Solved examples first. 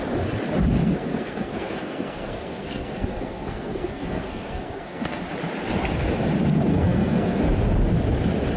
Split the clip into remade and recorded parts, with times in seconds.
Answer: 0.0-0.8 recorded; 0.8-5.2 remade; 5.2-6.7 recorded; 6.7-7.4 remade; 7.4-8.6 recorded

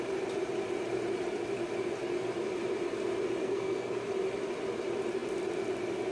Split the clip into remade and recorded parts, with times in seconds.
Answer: 0.0-3.4 recorded; 3.4-4.0 remade; 4.0-6.1 recorded

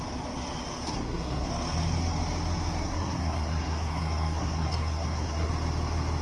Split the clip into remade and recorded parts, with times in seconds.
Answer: 0.0-0.9 recorded; 0.9-1.5 remade; 1.5-2.8 recorded; 2.8-5.5 remade; 5.5-6.2 recorded

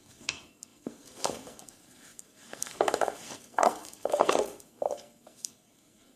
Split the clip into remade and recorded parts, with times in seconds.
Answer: 0.0-6.2 remade

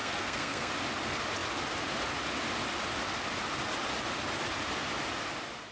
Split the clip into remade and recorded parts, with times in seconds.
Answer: 0.0-0.7 remade; 0.7-5.7 recorded

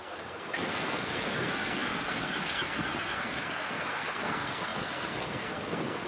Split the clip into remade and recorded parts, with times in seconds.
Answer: 0.0-6.1 remade